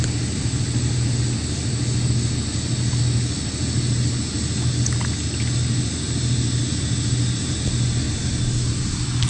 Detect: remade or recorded recorded